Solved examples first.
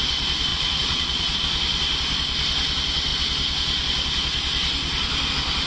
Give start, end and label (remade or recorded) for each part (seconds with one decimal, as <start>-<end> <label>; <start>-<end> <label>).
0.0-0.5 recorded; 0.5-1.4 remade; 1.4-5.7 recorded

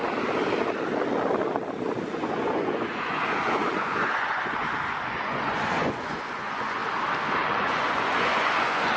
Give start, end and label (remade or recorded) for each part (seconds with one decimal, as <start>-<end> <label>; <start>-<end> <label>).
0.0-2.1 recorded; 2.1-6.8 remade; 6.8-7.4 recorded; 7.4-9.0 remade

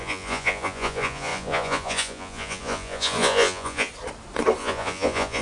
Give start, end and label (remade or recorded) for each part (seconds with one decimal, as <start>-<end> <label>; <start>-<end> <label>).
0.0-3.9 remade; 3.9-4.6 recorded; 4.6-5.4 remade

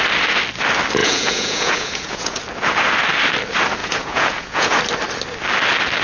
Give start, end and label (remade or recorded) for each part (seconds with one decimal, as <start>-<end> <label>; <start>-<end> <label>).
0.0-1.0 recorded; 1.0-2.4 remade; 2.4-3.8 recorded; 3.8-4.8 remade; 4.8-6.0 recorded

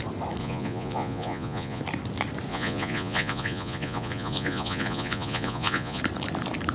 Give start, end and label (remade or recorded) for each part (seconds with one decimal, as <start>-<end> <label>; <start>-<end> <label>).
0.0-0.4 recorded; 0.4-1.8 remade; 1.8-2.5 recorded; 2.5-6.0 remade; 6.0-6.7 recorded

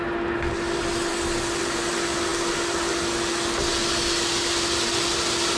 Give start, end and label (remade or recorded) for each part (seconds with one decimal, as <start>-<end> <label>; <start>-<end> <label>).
0.0-5.6 recorded